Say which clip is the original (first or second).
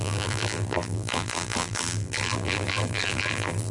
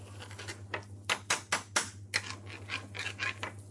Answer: second